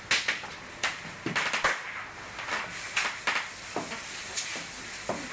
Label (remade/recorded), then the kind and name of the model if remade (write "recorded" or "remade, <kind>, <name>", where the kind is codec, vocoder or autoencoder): recorded